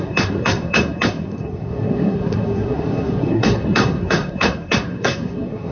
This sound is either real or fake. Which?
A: fake